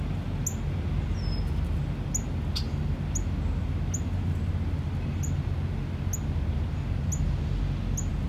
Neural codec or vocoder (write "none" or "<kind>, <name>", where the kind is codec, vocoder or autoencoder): none